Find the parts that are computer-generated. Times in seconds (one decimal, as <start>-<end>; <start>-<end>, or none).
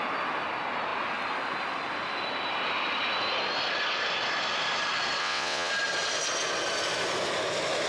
5.2-5.7